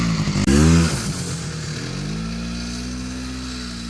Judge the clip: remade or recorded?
recorded